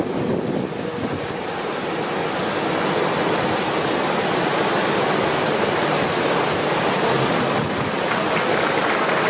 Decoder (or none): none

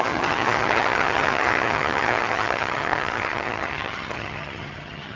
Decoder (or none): vocoder, HiFi-GAN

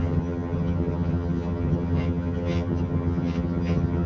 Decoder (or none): vocoder, HiFi-GAN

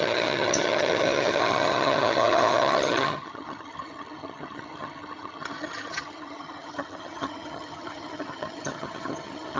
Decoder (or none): vocoder, HiFi-GAN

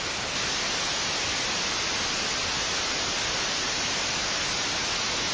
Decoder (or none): none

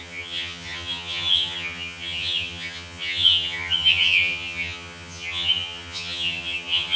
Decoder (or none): vocoder, HiFi-GAN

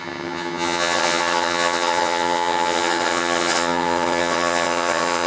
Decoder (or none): vocoder, HiFi-GAN